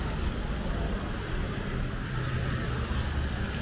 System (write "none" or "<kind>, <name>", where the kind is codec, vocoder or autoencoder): none